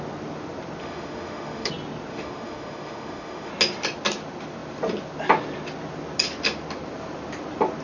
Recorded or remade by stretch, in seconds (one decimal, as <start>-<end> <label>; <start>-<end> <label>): 0.0-0.8 recorded; 0.8-1.7 remade; 1.7-2.1 recorded; 2.1-3.5 remade; 3.5-7.8 recorded